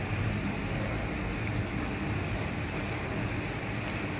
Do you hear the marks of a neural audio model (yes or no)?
no